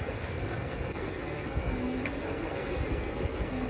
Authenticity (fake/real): fake